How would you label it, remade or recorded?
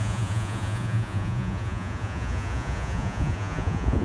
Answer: remade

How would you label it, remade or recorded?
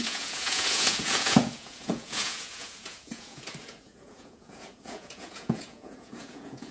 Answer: remade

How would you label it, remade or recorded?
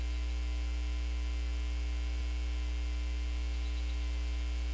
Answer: recorded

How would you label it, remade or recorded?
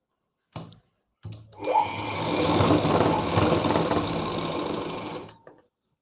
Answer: recorded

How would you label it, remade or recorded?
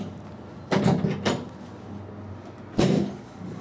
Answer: recorded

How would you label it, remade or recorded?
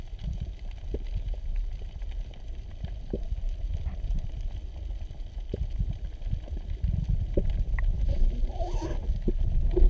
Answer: recorded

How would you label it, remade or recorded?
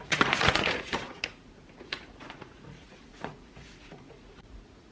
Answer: remade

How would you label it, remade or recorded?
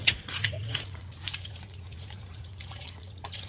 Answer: remade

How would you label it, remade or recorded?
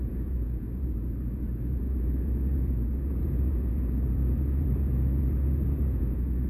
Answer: remade